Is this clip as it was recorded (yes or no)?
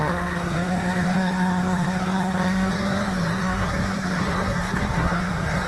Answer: no